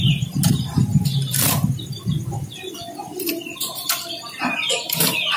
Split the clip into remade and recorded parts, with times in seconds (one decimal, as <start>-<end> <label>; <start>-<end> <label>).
0.0-3.1 recorded; 3.1-5.4 remade